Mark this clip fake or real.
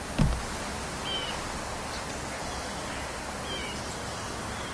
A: real